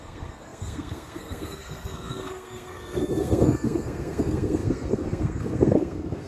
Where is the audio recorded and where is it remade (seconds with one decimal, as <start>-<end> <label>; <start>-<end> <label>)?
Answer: 0.0-6.3 remade